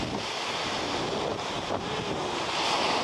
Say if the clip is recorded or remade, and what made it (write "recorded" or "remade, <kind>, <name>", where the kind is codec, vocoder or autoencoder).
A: recorded